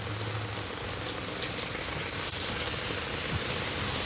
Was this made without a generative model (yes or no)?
yes